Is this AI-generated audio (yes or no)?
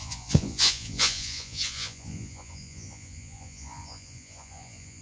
yes